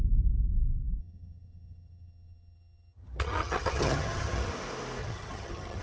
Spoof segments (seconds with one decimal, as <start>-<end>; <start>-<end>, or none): 1.0-4.5; 5.0-5.8